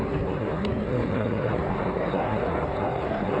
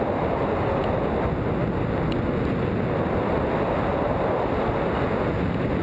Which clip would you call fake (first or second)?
first